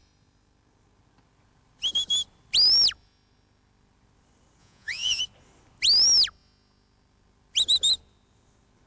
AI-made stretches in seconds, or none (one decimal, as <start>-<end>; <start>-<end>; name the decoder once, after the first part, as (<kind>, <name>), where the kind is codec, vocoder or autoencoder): 4.6-5.2 (vocoder, Vocos)